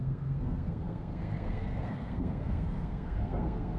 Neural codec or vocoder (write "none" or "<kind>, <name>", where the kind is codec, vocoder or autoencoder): codec, SNAC